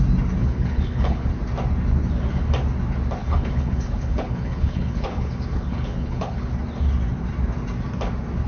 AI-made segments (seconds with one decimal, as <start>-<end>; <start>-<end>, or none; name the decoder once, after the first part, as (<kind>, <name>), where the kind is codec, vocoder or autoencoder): 0.4-1.3 (codec, HILCodec); 3.2-6.5